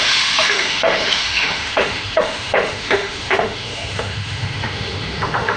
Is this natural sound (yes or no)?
no